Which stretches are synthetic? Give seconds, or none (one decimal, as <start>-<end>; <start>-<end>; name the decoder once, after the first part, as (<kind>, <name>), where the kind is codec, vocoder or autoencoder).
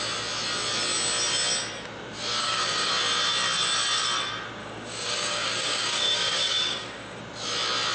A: 2.4-2.9 (codec, DAC); 4.6-7.2